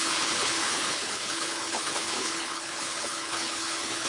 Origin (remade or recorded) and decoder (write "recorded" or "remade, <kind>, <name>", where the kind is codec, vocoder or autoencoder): remade, codec, HILCodec